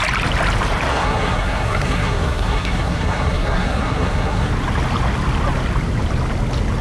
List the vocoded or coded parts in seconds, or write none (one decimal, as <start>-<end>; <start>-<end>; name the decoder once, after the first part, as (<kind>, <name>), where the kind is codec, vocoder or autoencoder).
0.9-4.5 (codec, SNAC)